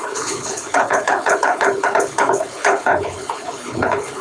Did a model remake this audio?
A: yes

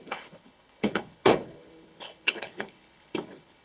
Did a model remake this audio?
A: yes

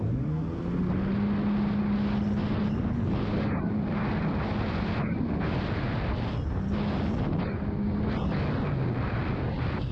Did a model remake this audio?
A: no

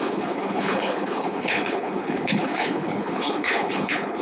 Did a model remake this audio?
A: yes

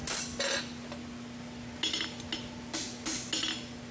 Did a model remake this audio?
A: no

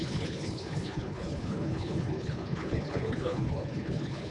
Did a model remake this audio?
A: yes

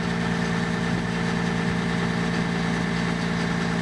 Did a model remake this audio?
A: no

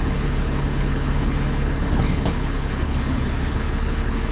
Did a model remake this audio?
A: yes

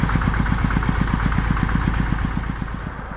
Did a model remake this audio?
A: no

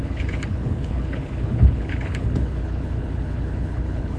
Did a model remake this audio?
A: yes